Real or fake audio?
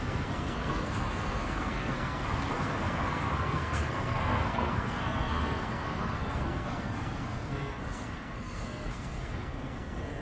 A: fake